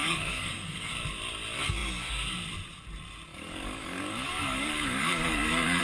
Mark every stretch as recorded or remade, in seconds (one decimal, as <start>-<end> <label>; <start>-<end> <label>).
0.0-0.9 remade; 0.9-3.3 recorded; 3.3-5.8 remade